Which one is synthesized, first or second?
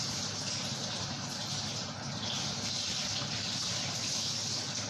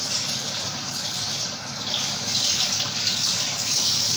second